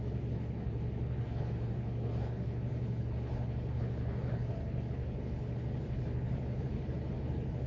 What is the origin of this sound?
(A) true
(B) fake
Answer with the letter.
B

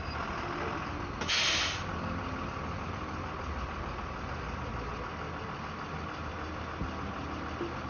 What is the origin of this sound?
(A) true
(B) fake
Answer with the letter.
A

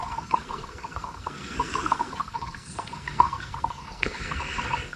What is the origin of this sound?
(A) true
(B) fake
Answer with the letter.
B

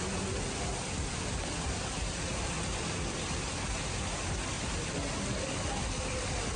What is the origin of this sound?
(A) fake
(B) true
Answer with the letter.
B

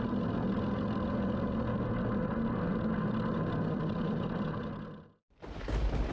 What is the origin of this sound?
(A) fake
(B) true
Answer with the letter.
B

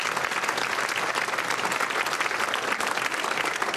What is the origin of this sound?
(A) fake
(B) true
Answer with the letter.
B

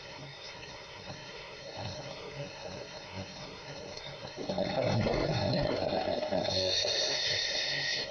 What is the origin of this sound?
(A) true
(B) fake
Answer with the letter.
B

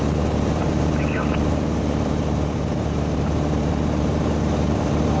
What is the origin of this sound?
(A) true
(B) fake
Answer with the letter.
B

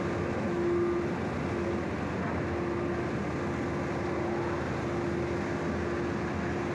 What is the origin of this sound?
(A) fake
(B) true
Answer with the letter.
B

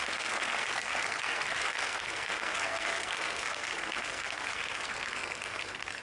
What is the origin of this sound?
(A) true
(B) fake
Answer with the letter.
B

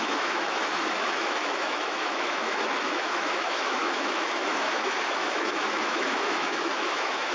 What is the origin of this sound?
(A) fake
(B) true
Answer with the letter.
A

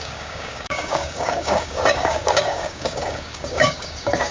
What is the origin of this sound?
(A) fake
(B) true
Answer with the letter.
A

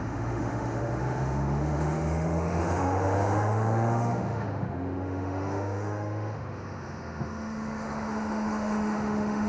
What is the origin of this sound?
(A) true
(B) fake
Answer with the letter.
B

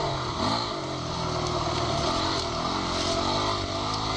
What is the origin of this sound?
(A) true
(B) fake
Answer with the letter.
A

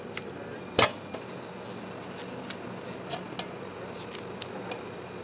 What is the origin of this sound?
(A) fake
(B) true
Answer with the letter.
B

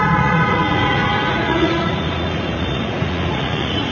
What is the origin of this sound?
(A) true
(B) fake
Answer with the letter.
B